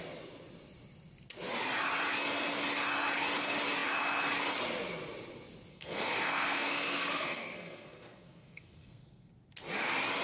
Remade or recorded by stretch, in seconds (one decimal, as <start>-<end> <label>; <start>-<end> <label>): 0.0-5.7 recorded; 5.7-9.3 remade; 9.3-10.2 recorded